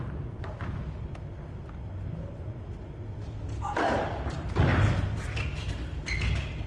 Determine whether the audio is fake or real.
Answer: real